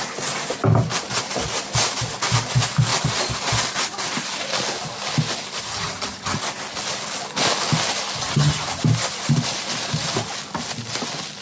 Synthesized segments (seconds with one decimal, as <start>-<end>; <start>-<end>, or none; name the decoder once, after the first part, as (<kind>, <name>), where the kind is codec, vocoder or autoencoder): 5.7-6.4 (vocoder, HiFi-GAN); 8.2-8.8